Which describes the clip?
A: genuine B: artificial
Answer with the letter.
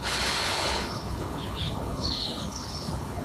B